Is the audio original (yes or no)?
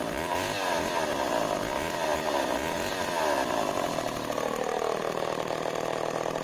yes